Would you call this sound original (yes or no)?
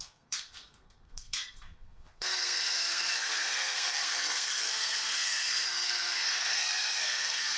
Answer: no